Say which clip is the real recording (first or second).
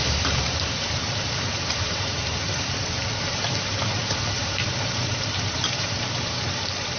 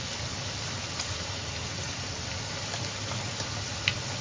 second